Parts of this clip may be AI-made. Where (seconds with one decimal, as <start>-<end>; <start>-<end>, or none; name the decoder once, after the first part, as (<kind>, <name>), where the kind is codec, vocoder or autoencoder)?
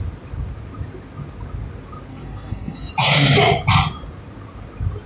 2.1-2.9 (codec, SNAC)